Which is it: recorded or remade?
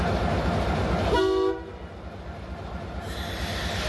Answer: recorded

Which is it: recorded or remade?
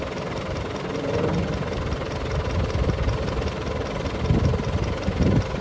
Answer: recorded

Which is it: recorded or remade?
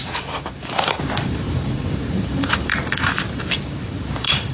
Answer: remade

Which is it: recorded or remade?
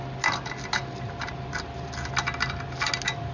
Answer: recorded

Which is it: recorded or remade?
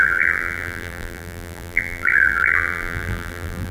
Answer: remade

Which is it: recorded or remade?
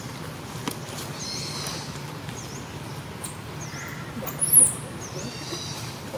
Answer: recorded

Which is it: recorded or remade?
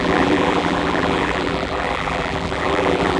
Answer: remade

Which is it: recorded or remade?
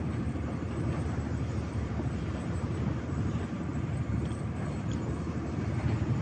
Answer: remade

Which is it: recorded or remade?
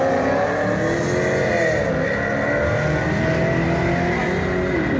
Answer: recorded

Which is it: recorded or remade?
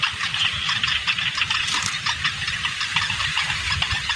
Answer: remade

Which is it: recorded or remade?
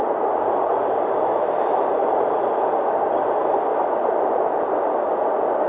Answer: recorded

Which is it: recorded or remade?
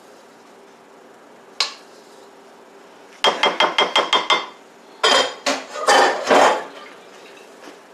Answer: recorded